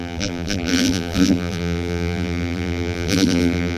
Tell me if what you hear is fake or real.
fake